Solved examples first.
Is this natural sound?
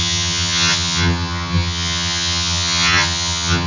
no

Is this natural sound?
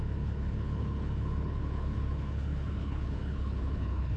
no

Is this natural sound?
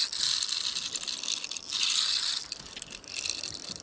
yes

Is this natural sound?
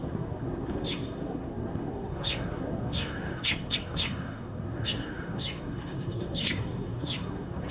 no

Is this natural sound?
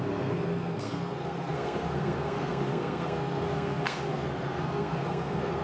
no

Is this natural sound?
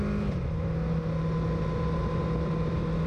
yes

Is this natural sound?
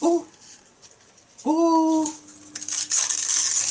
yes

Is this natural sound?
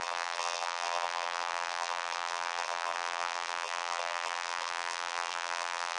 no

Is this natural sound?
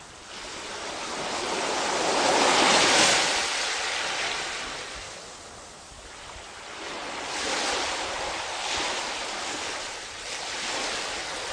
yes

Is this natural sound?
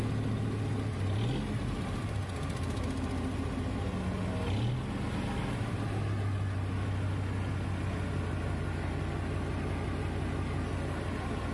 yes